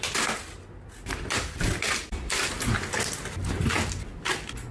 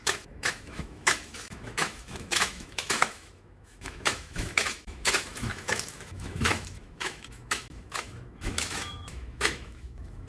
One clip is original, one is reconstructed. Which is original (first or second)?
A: first